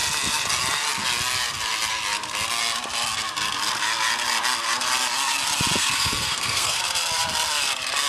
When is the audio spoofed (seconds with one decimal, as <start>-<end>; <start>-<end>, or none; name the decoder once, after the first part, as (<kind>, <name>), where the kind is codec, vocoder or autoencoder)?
5.8-6.8 (codec, SNAC)

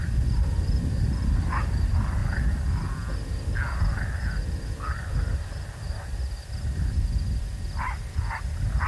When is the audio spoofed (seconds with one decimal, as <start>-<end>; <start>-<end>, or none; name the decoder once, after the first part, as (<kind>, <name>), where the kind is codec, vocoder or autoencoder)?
none

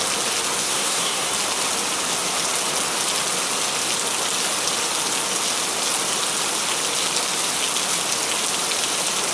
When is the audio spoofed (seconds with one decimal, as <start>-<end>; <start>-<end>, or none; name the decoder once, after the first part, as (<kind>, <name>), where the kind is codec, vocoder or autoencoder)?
0.6-1.3 (codec, SNAC)

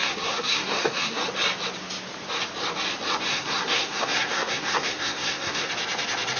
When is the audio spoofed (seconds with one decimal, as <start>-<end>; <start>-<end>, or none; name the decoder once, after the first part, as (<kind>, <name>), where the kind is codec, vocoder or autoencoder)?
0.0-1.2 (codec, SNAC); 3.3-5.7

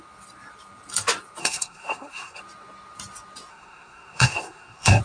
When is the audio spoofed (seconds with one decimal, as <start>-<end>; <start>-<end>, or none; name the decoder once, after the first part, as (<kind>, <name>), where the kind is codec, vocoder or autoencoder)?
1.4-2.4 (codec, SNAC); 3.5-5.0

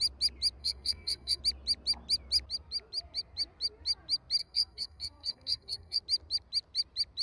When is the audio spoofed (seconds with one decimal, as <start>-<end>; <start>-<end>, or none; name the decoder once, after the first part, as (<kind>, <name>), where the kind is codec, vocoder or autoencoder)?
0.6-1.4 (codec, SNAC); 4.4-6.0

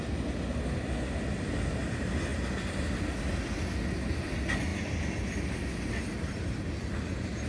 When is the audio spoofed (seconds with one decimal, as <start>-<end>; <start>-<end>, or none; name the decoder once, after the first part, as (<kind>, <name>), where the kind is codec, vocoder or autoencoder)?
none

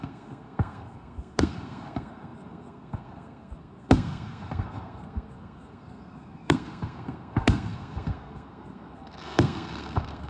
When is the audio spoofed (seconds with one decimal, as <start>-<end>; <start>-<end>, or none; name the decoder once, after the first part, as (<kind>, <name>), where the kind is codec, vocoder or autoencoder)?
0.0-10.3 (codec, SNAC)